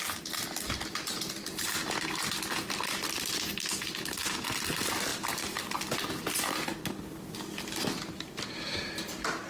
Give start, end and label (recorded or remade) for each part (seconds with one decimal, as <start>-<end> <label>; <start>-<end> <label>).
0.0-9.5 recorded